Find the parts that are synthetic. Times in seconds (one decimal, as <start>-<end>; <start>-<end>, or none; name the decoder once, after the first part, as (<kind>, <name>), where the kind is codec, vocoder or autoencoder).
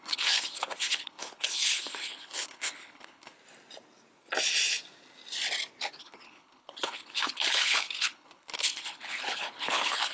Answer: 0.0-3.3 (codec, HILCodec); 6.0-10.1